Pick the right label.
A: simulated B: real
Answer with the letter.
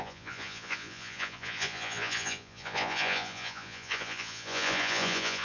A